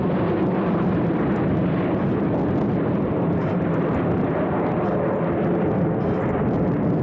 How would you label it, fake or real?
real